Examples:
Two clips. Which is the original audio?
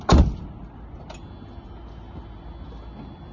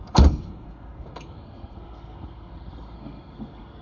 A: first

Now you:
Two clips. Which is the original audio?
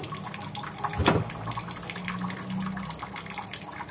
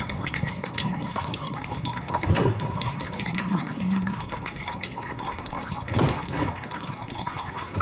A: first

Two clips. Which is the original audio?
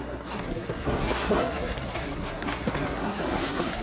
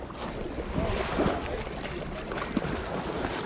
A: second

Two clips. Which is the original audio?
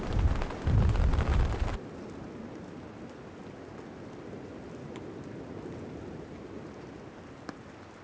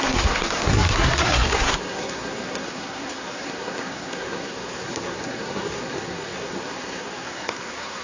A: first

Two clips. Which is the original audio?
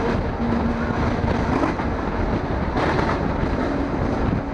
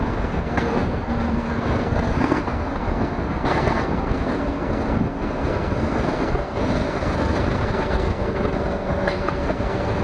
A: first